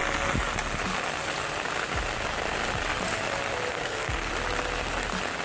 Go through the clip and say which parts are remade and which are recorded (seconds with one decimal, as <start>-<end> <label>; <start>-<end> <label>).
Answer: 0.0-3.7 recorded; 3.7-4.3 remade; 4.3-5.4 recorded